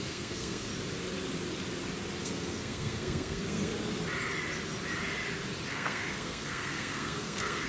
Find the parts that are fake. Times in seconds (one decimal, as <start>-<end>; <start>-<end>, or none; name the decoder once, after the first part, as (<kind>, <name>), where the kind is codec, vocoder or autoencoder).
0.0-0.7 (codec, SNAC); 2.2-3.7; 5.7-7.7